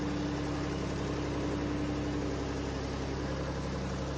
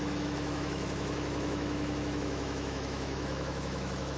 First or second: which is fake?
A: second